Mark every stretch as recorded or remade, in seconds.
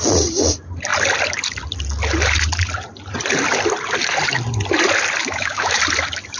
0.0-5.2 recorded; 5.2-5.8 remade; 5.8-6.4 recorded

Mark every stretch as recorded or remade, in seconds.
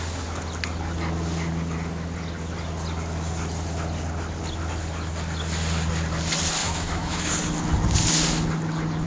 0.0-6.6 recorded; 6.6-7.3 remade; 7.3-9.1 recorded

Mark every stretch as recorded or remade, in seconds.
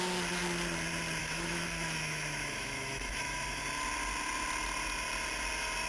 0.0-1.2 recorded; 1.2-3.6 remade; 3.6-5.9 recorded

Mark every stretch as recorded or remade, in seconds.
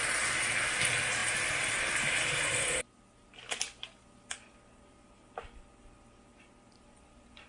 0.0-7.5 recorded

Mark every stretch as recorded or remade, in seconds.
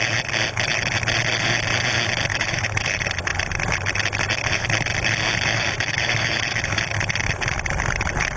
0.0-2.3 recorded; 2.3-2.9 remade; 2.9-5.5 recorded; 5.5-6.6 remade; 6.6-8.4 recorded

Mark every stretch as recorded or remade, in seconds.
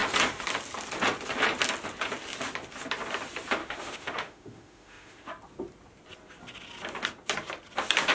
0.0-3.6 recorded; 3.6-5.3 remade; 5.3-8.1 recorded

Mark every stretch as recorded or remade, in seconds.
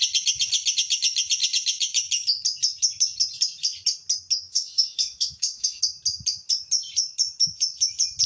0.0-4.5 recorded; 4.5-5.8 remade; 5.8-8.3 recorded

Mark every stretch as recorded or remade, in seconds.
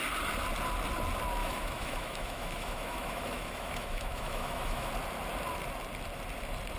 0.0-1.4 recorded; 1.4-4.9 remade; 4.9-6.8 recorded